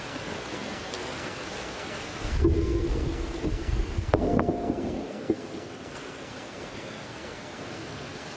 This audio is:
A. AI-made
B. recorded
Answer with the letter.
A